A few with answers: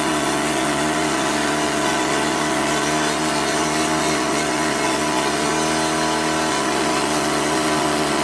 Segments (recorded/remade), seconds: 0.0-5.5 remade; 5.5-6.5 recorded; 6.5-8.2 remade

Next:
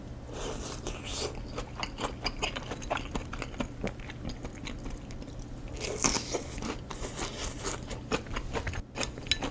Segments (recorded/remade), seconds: 0.0-9.5 recorded

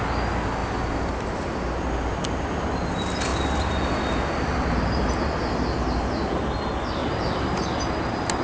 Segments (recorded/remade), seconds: 0.0-7.0 recorded; 7.0-7.9 remade; 7.9-8.4 recorded

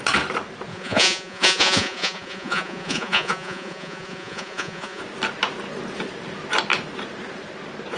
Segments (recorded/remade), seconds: 0.0-0.7 recorded; 0.7-5.0 remade; 5.0-8.0 recorded